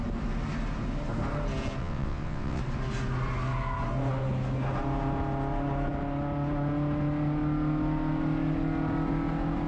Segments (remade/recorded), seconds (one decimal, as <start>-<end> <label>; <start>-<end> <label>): 0.0-1.8 recorded; 1.8-2.6 remade; 2.6-9.7 recorded